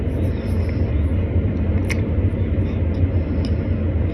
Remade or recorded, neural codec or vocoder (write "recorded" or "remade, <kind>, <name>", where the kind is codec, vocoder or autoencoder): recorded